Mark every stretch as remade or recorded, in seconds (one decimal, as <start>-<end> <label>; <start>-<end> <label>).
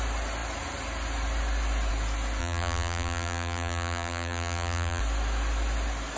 0.0-2.4 recorded; 2.4-5.0 remade; 5.0-6.2 recorded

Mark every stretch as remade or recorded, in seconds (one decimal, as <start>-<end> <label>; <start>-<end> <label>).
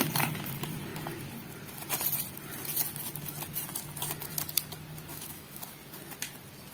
0.0-5.1 recorded; 5.1-5.6 remade; 5.6-6.7 recorded